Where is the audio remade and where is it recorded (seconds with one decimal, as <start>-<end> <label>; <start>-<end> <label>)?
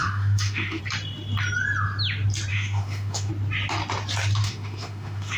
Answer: 0.0-0.8 remade; 0.8-2.5 recorded; 2.5-3.3 remade; 3.3-4.4 recorded; 4.4-5.4 remade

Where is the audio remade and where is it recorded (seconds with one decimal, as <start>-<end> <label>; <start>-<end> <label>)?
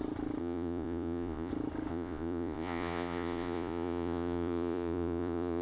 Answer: 0.0-0.4 recorded; 0.4-1.5 remade; 1.5-1.9 recorded; 1.9-5.6 remade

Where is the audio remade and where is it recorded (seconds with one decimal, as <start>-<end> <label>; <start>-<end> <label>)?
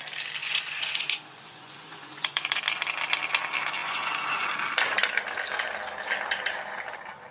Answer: 0.0-0.4 recorded; 0.4-2.6 remade; 2.6-3.8 recorded; 3.8-4.5 remade; 4.5-7.3 recorded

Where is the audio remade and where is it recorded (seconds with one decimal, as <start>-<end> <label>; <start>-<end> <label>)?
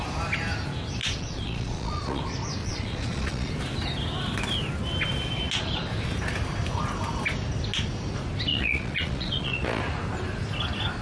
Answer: 0.0-1.0 recorded; 1.0-2.2 remade; 2.2-2.6 recorded; 2.6-3.5 remade; 3.5-8.5 recorded; 8.5-9.8 remade; 9.8-11.0 recorded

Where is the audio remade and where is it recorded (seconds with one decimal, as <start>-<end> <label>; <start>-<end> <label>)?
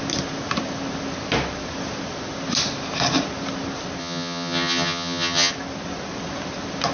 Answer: 0.0-4.0 recorded; 4.0-5.5 remade; 5.5-6.9 recorded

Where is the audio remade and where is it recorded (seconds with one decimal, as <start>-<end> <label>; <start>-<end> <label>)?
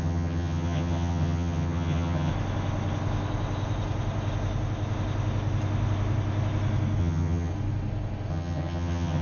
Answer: 0.0-2.3 remade; 2.3-7.0 recorded; 7.0-7.5 remade; 7.5-8.3 recorded; 8.3-9.2 remade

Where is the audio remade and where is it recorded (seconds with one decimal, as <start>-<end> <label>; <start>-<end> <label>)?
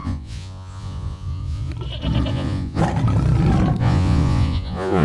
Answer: 0.0-1.7 remade; 1.7-2.3 recorded; 2.3-2.8 remade; 2.8-3.8 recorded; 3.8-5.0 remade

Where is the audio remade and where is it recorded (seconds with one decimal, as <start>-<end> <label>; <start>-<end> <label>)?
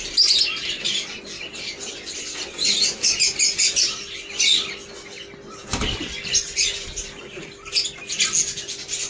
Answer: 0.0-9.1 recorded